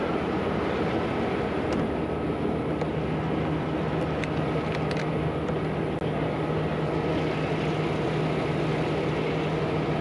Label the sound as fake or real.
real